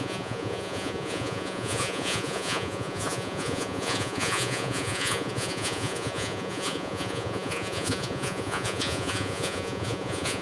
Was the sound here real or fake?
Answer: fake